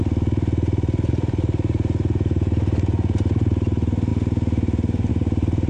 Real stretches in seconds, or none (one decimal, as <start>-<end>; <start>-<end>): 0.0-1.1